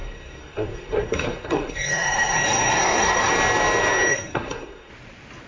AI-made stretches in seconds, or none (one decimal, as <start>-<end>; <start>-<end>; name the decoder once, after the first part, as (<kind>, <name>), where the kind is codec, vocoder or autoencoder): 0.0-3.3 (codec, SNAC); 4.1-4.9